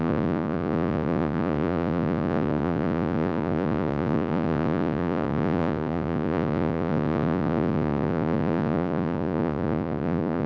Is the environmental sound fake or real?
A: fake